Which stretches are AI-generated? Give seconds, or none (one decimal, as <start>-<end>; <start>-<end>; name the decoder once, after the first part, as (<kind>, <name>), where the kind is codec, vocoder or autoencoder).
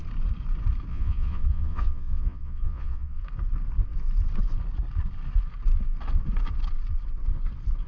0.9-3.2 (vocoder, Vocos)